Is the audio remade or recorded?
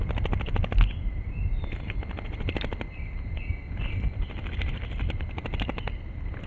recorded